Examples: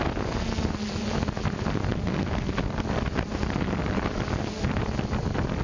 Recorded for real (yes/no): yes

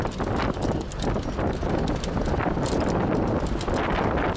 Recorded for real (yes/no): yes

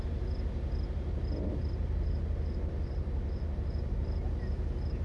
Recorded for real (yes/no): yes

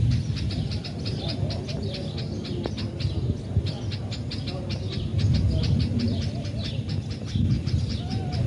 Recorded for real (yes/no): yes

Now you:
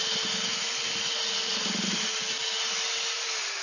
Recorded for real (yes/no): yes